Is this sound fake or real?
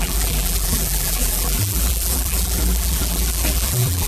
fake